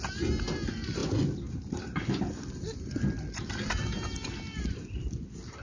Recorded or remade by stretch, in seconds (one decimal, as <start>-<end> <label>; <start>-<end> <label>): 0.0-5.6 recorded